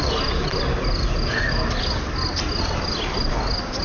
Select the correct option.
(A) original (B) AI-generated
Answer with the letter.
A